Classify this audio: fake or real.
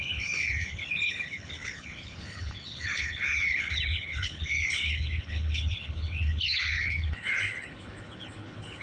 fake